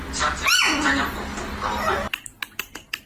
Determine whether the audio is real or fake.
real